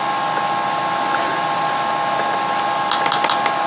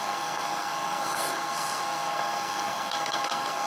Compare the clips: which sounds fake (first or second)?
second